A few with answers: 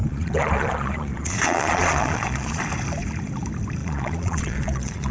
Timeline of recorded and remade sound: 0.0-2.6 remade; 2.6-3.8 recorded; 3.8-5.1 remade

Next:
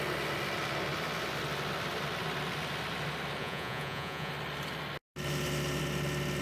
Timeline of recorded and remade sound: 0.0-3.4 recorded; 3.4-4.3 remade; 4.3-6.4 recorded

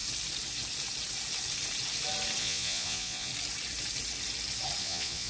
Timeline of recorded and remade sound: 0.0-2.4 recorded; 2.4-3.3 remade; 3.3-4.8 recorded; 4.8-5.3 remade

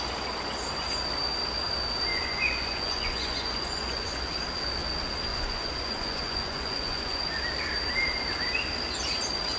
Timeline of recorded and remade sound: 0.0-2.1 recorded; 2.1-4.2 remade; 4.2-5.3 recorded; 5.3-7.2 remade; 7.2-9.6 recorded

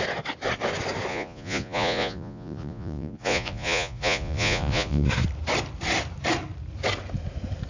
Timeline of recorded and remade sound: 0.0-1.1 recorded; 1.1-5.1 remade; 5.1-7.7 recorded